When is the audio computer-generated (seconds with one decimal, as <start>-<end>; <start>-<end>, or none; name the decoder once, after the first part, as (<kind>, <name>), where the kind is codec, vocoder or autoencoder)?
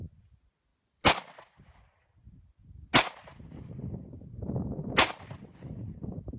none